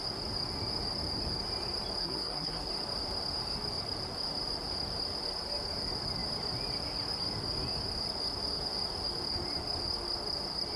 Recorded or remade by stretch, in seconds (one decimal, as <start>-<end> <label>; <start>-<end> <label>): 0.0-2.0 recorded; 2.0-2.7 remade; 2.7-10.8 recorded